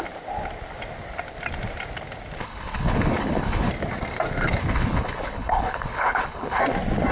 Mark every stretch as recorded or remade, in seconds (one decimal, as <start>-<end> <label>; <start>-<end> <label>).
0.0-2.4 recorded; 2.4-3.7 remade; 3.7-4.6 recorded; 4.6-6.6 remade; 6.6-7.1 recorded